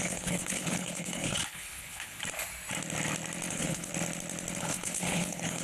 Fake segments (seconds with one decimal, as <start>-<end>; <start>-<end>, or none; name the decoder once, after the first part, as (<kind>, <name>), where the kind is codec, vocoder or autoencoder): 0.0-2.2 (codec, HILCodec); 3.5-3.9; 4.6-5.6